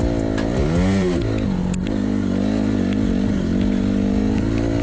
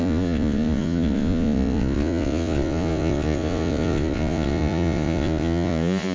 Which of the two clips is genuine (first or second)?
first